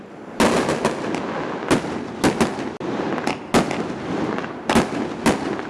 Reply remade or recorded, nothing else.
recorded